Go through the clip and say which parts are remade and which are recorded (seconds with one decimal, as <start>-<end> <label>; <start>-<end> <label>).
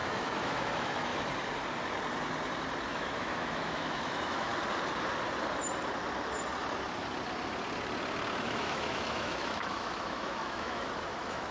0.0-1.1 remade; 1.1-2.9 recorded; 2.9-4.5 remade; 4.5-8.4 recorded; 8.4-11.5 remade